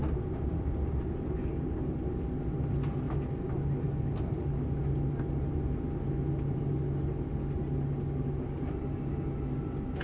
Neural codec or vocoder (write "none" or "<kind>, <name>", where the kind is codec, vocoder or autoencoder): none